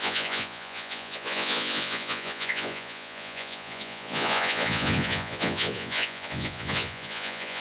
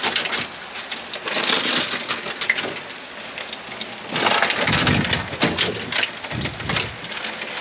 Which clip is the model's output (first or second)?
first